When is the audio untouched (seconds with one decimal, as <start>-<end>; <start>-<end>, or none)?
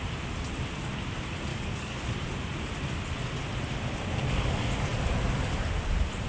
0.0-1.5; 2.1-6.3